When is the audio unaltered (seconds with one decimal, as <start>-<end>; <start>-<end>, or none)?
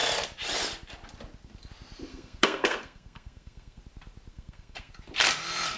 0.0-2.1; 3.8-4.3; 4.9-5.8